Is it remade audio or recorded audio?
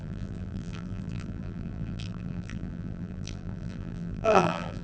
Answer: remade